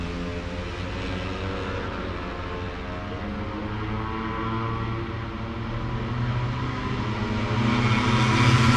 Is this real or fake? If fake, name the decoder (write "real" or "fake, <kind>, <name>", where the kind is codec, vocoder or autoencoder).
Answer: real